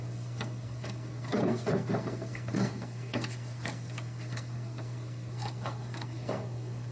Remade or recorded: remade